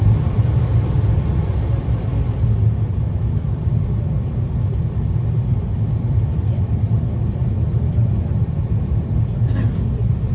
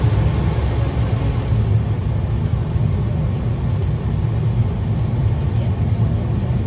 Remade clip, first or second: first